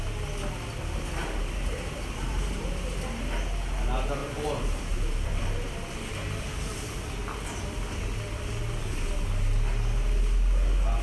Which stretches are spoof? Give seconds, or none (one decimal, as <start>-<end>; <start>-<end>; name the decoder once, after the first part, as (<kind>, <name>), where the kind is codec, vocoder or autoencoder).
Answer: 1.2-2.8 (vocoder, BigVGAN v2); 4.2-5.7